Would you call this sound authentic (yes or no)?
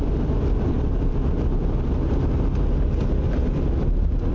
yes